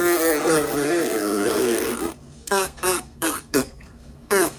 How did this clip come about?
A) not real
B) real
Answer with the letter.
A